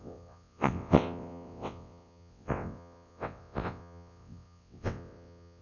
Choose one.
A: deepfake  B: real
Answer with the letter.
A